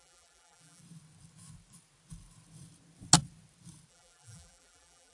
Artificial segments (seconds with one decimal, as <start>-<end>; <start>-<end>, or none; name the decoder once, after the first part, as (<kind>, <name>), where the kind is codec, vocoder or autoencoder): 0.0-0.8 (vocoder, BigVGAN v2); 3.9-5.1